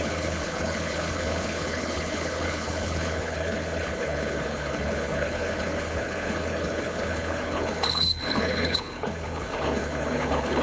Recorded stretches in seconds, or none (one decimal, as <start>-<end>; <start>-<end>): none